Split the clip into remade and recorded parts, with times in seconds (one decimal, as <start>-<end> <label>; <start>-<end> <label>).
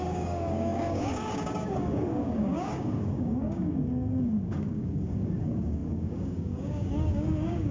0.0-7.7 remade